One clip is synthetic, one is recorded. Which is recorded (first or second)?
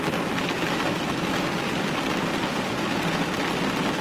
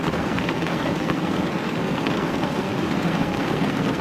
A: first